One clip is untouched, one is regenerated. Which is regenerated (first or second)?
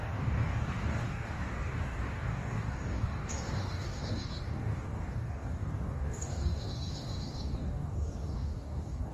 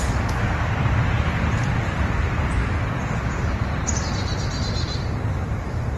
first